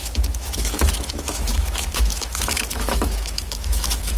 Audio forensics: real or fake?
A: fake